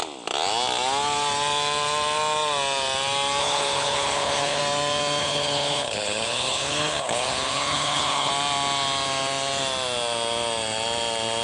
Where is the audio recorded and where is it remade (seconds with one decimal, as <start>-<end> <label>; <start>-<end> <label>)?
0.0-3.4 recorded; 3.4-4.6 remade; 4.6-5.2 recorded; 5.2-8.3 remade; 8.3-11.4 recorded